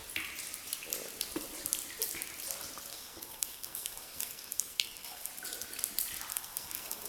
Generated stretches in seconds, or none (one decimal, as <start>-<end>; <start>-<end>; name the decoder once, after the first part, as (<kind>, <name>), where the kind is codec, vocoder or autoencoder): 2.9-5.3 (codec, SNAC); 6.3-7.1